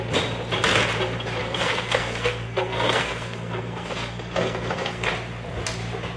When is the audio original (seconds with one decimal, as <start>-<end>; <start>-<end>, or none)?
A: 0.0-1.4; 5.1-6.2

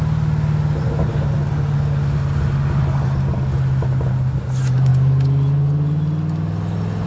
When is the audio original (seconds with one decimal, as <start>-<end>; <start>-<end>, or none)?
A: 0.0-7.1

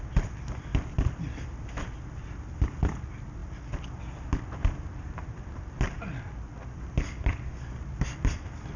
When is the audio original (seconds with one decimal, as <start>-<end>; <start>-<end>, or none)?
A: 0.0-8.8

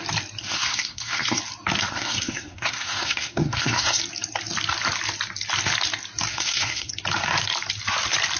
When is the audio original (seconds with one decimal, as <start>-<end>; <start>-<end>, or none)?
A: 0.0-0.4; 1.4-1.9; 4.0-6.3; 6.9-8.4

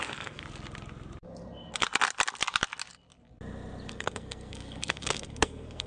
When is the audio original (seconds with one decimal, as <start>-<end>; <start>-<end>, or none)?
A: 0.4-3.9